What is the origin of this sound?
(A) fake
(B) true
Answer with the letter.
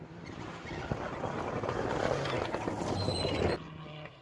B